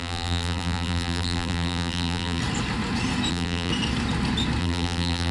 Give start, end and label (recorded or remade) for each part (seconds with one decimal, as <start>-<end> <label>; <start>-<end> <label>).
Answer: 0.0-2.4 remade; 2.4-3.3 recorded; 3.3-3.7 remade; 3.7-4.6 recorded; 4.6-5.3 remade

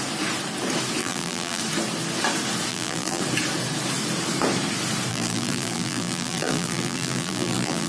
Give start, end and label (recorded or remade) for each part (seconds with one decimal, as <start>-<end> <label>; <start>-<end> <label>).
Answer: 0.0-1.0 recorded; 1.0-1.6 remade; 1.6-2.7 recorded; 2.7-3.2 remade; 3.2-5.1 recorded; 5.1-7.9 remade

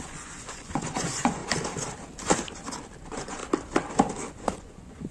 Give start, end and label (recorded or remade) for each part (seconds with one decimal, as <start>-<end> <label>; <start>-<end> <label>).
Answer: 0.0-1.4 remade; 1.4-3.0 recorded; 3.0-3.4 remade; 3.4-4.3 recorded; 4.3-5.1 remade

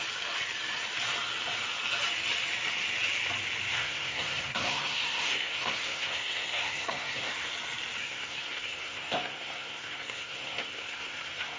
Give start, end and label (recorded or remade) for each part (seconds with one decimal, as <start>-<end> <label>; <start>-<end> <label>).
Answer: 0.0-3.7 recorded; 3.7-7.5 remade; 7.5-8.0 recorded; 8.0-11.6 remade

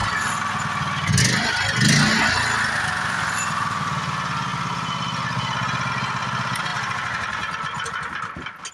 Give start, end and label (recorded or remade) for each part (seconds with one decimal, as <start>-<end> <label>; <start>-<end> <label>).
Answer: 0.0-8.7 recorded